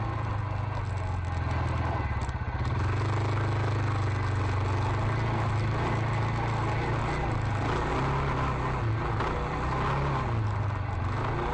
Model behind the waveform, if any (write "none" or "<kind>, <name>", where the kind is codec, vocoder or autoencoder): none